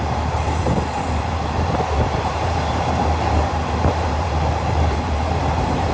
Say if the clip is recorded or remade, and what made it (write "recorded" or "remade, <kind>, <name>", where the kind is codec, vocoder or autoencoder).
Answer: remade, vocoder, BigVGAN v2